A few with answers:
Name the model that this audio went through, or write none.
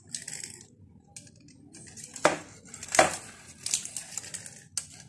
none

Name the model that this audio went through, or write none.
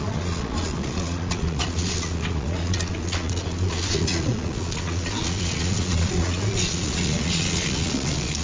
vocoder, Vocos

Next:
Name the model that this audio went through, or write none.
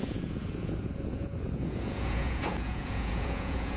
vocoder, Vocos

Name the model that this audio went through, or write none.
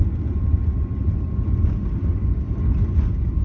none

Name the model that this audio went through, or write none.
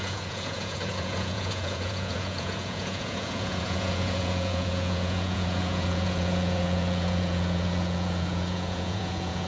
vocoder, Vocos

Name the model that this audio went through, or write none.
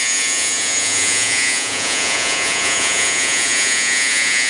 vocoder, Vocos